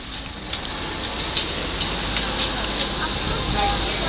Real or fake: real